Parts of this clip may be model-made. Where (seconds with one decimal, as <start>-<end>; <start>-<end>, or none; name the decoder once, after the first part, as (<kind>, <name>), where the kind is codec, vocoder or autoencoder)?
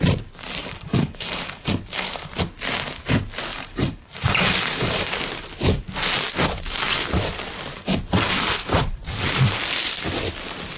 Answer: 0.6-1.7 (vocoder, BigVGAN v2); 3.5-5.1; 7.8-9.0